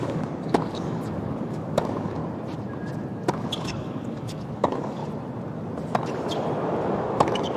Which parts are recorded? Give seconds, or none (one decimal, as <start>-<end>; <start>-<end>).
2.2-3.3; 5.0-6.9